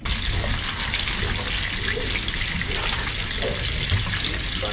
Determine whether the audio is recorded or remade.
recorded